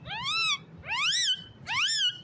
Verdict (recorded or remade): recorded